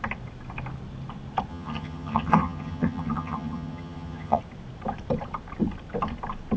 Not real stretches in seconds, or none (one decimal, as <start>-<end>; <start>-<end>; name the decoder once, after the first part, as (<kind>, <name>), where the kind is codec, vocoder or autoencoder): 1.5-4.4 (vocoder, HiFi-GAN)